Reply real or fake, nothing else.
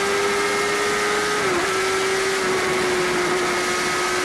real